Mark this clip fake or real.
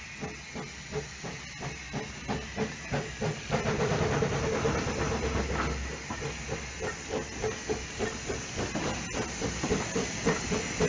real